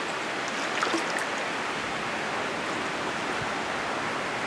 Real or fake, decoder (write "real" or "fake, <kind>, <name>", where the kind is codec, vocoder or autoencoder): real